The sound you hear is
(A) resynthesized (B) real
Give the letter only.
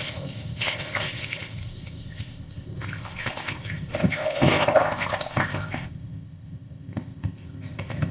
A